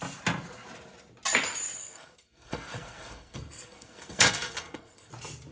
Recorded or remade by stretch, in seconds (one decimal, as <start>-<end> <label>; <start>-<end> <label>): 0.0-1.8 recorded; 1.8-5.1 remade; 5.1-5.5 recorded